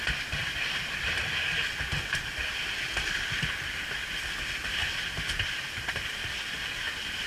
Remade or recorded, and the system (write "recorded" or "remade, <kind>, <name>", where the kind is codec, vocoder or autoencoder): recorded